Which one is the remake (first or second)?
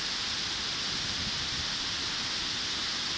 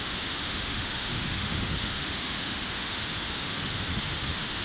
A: second